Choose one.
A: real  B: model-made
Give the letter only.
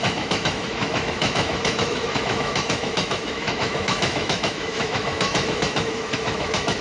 B